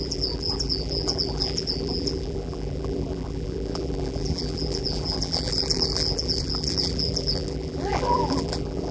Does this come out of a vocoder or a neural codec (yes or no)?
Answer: yes